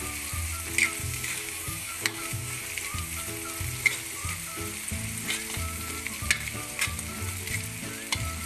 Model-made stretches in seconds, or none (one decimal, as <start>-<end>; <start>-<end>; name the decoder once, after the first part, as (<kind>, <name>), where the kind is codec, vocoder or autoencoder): 1.0-2.6 (codec, DAC)

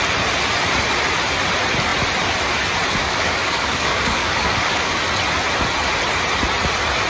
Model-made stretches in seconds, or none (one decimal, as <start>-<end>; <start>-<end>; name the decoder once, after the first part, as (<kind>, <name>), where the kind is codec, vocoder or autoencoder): 3.0-4.9 (codec, DAC)